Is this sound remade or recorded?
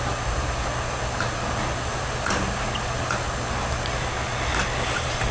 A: recorded